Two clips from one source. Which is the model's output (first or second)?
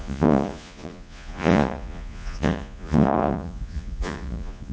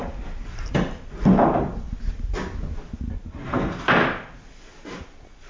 first